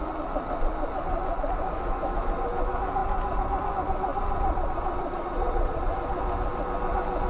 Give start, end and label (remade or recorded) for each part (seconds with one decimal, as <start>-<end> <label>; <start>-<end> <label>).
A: 0.0-4.1 recorded; 4.1-5.9 remade; 5.9-7.3 recorded